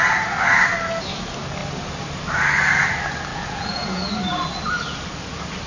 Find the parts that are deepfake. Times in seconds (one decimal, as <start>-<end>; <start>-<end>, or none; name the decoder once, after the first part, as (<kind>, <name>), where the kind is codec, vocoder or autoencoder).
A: 3.3-4.1 (vocoder, Vocos)